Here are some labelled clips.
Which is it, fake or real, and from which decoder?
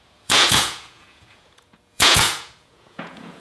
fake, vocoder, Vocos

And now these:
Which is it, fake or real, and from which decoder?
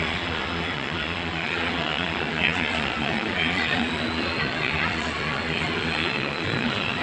fake, vocoder, Vocos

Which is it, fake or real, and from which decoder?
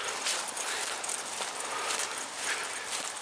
real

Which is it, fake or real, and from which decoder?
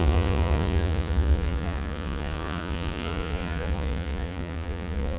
fake, vocoder, Vocos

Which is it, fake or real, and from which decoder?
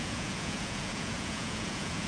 fake, vocoder, Vocos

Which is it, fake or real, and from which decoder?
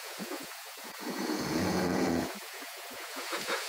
fake, vocoder, Vocos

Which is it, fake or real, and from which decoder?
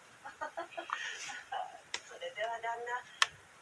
real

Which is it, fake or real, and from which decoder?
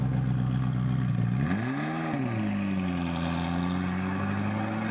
real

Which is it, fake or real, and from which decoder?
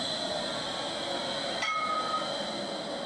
real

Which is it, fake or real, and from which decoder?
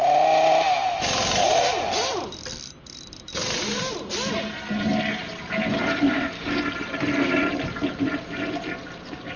real